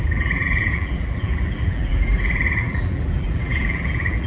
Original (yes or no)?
no